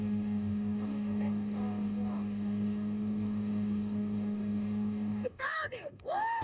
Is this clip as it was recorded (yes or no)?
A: no